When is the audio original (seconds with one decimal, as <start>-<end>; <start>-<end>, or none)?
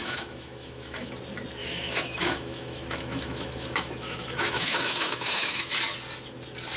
1.1-1.6; 5.7-6.8